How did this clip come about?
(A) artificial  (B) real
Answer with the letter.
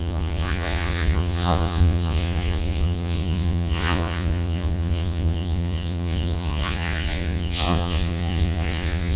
A